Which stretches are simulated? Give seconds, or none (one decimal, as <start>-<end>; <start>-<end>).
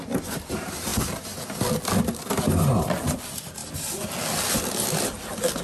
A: none